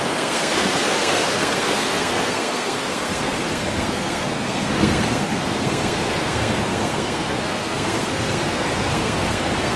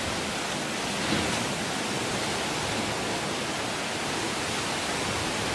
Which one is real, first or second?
second